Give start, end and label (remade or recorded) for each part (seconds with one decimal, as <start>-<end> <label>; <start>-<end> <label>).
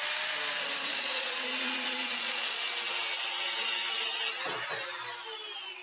0.0-0.9 recorded; 0.9-2.7 remade; 2.7-5.8 recorded